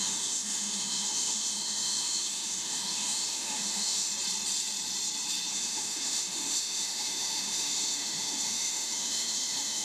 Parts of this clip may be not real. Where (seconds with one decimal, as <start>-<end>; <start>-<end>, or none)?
0.0-4.1; 5.5-9.8